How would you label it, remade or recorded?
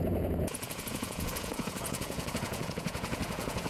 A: remade